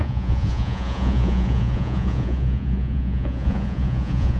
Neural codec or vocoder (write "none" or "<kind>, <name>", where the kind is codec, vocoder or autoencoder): vocoder, Vocos